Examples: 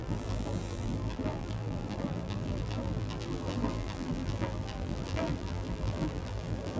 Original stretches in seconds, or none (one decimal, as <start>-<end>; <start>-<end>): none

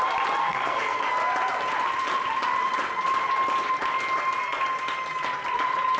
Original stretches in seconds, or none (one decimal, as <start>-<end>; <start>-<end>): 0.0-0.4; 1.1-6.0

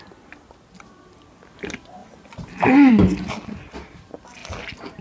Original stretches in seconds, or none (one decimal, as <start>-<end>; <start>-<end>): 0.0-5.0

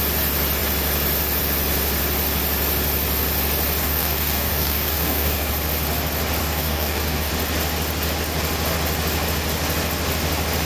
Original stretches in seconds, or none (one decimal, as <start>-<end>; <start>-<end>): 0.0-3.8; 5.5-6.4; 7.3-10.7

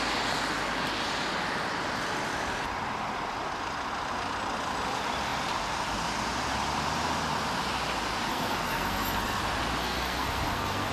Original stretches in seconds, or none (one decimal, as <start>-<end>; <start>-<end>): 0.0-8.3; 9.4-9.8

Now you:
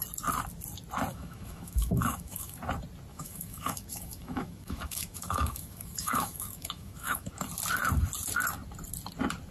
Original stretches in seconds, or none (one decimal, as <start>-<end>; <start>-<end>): 0.0-1.1; 2.6-3.1; 7.3-9.5

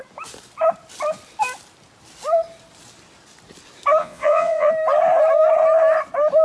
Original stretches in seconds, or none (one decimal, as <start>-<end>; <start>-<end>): 0.0-4.0; 4.7-6.4

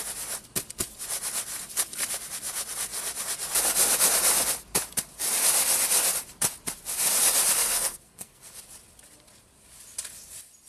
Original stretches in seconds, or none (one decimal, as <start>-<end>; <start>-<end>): 0.0-7.6; 8.6-10.7